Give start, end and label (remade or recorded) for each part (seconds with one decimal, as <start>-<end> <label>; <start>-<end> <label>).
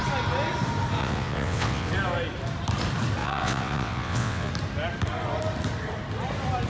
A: 0.0-1.0 recorded; 1.0-1.9 remade; 1.9-3.2 recorded; 3.2-4.5 remade; 4.5-6.7 recorded